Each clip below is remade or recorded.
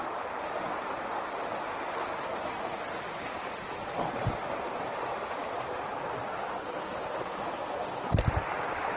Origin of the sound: recorded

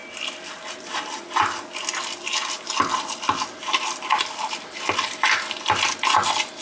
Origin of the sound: recorded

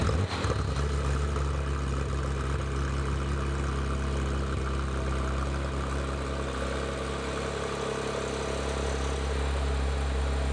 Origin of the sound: recorded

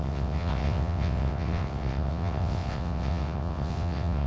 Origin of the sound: remade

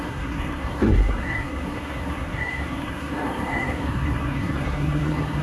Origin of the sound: remade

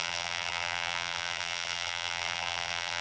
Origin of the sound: remade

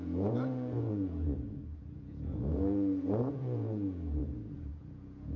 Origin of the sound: remade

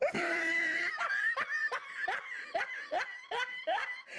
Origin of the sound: remade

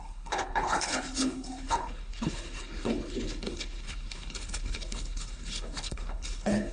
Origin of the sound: remade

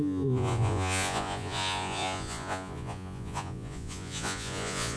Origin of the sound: remade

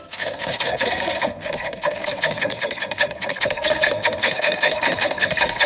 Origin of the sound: remade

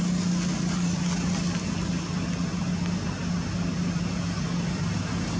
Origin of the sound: recorded